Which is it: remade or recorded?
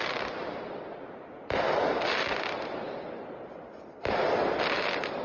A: remade